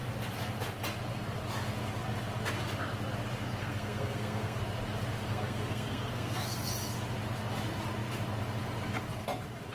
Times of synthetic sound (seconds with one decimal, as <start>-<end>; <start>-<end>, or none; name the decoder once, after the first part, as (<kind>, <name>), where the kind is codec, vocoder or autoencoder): 3.6-4.6 (codec, SNAC); 5.3-6.7